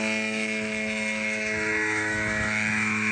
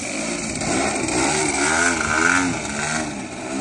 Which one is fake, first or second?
first